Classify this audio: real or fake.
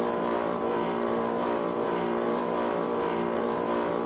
fake